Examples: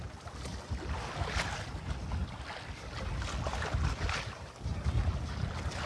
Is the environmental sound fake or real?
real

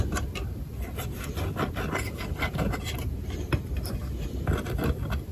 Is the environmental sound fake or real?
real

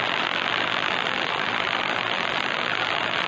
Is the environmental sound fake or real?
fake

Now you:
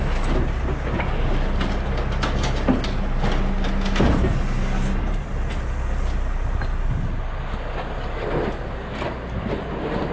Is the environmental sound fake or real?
real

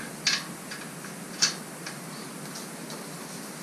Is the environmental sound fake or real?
real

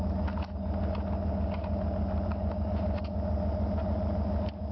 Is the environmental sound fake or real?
real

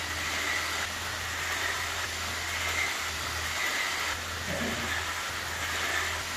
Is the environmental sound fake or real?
real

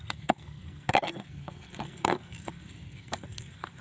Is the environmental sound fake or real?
fake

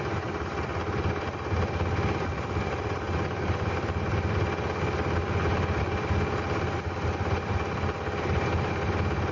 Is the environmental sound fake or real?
real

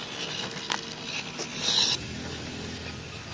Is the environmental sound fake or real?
real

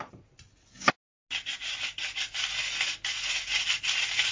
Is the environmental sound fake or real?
real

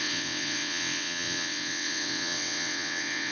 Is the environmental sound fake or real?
fake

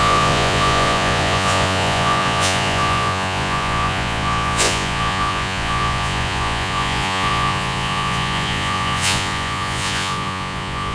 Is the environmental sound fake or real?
fake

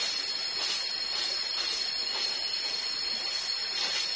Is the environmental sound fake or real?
real